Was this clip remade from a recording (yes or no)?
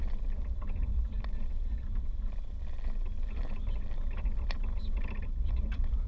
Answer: yes